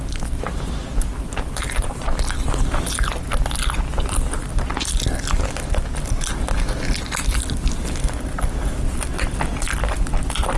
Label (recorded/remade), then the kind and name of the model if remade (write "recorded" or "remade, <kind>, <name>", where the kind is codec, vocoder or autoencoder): recorded